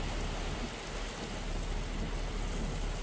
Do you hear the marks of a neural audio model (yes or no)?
no